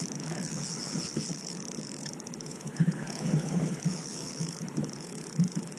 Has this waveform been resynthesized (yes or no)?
yes